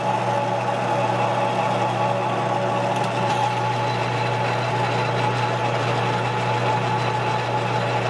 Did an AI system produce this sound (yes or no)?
no